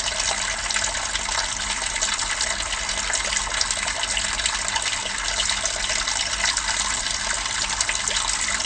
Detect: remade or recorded recorded